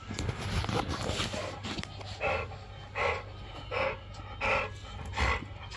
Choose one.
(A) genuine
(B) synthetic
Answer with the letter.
A